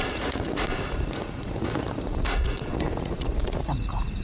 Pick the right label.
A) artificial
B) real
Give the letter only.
A